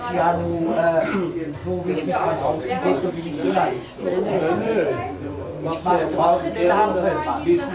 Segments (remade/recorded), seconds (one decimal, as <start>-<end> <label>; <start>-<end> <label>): 0.0-3.4 recorded; 3.4-5.4 remade; 5.4-7.7 recorded